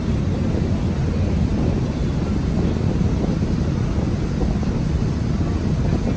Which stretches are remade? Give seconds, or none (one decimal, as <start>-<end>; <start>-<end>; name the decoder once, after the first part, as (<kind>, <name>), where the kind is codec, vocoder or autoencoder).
none